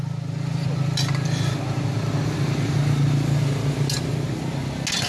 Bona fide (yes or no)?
yes